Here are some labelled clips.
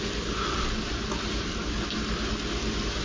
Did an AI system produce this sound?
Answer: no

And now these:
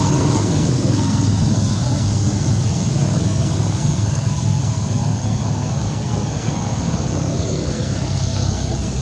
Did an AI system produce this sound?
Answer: yes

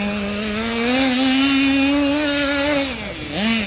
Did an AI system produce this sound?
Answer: no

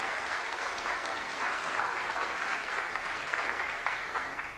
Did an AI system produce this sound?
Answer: yes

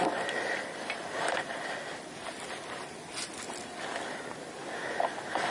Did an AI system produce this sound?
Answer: no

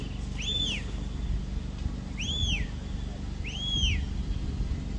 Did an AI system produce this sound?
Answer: no